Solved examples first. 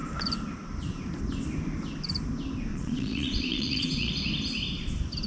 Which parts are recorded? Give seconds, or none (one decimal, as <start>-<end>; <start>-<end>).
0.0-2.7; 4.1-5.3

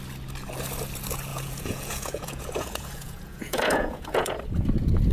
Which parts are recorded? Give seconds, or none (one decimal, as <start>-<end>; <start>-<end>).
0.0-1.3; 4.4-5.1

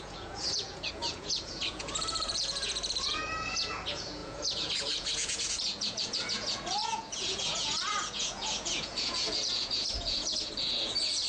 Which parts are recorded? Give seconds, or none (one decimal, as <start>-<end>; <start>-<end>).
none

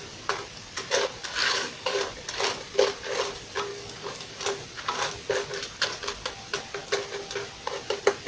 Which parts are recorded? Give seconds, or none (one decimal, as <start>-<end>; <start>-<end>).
0.0-1.4; 2.0-3.7; 4.3-8.3

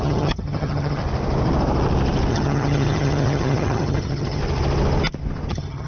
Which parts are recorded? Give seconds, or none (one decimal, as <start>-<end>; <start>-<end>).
1.0-2.3; 4.4-5.5